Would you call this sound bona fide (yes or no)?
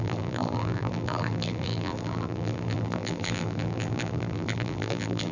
no